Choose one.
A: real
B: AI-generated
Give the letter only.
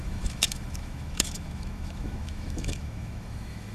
B